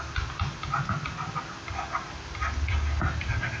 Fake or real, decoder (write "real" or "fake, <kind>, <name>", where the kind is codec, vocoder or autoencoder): real